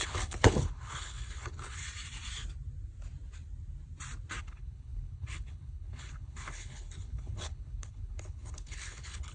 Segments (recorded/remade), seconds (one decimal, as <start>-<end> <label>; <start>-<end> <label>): 0.0-1.8 remade; 1.8-4.4 recorded; 4.4-9.3 remade